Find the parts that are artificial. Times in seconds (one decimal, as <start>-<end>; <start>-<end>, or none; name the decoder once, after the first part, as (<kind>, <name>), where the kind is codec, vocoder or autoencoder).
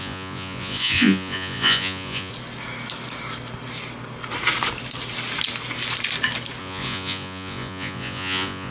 0.0-2.3 (vocoder, Vocos); 6.6-8.7